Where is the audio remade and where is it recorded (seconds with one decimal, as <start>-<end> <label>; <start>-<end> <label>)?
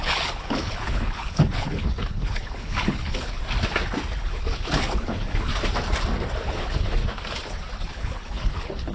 0.0-3.4 remade; 3.4-4.2 recorded; 4.2-5.5 remade; 5.5-6.5 recorded; 6.5-7.0 remade; 7.0-7.9 recorded; 7.9-8.9 remade